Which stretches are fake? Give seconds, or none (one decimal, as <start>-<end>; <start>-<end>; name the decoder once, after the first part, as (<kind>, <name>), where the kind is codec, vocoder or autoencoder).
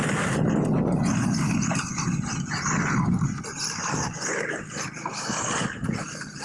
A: none